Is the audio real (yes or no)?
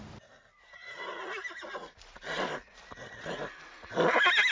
yes